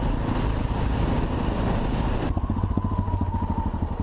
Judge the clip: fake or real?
real